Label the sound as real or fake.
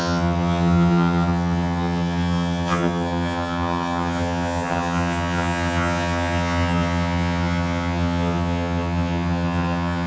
fake